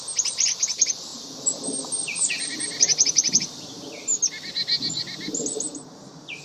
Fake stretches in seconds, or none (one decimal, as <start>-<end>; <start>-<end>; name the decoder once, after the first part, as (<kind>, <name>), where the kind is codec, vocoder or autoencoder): none